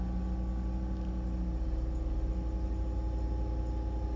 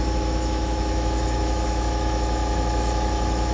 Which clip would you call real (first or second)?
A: first